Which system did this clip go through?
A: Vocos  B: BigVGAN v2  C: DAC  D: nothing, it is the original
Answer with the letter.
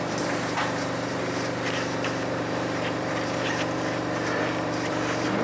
B